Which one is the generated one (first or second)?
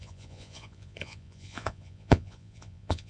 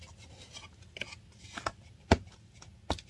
first